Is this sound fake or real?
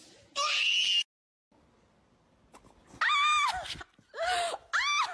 real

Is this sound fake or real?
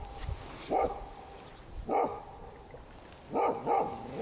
real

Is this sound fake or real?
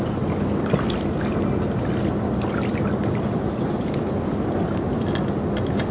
real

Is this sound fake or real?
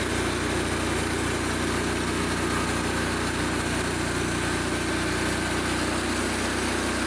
real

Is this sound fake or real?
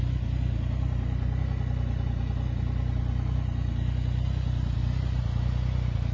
real